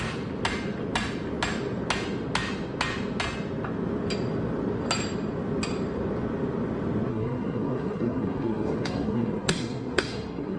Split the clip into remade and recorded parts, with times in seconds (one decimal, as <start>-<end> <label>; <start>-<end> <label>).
0.0-7.1 recorded; 7.1-10.6 remade